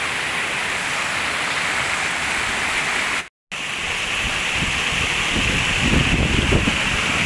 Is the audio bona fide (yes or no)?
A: yes